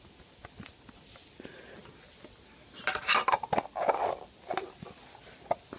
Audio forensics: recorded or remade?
recorded